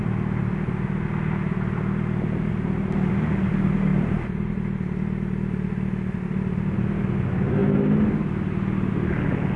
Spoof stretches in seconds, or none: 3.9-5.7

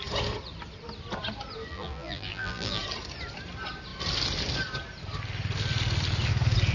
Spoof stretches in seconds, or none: 1.7-2.8

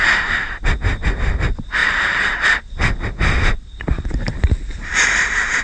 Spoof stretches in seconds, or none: 1.8-5.6

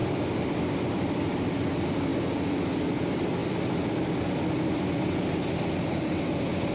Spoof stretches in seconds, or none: 0.0-1.2

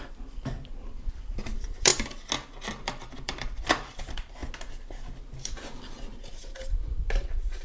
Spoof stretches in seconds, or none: 0.0-1.9; 2.8-4.4; 6.4-7.6

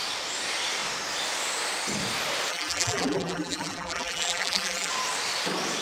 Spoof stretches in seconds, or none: 2.5-4.9